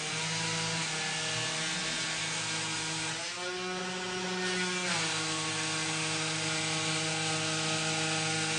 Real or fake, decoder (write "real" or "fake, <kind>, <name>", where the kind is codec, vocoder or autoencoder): real